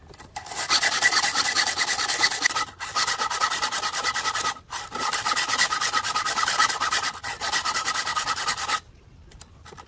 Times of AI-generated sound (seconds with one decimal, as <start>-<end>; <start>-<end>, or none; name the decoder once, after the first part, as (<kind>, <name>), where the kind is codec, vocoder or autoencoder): 7.3-7.9 (vocoder, BigVGAN v2)